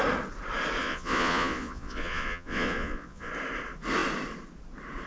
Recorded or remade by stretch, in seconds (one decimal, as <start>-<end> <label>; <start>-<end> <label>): 0.0-0.8 recorded; 0.8-3.3 remade; 3.3-5.1 recorded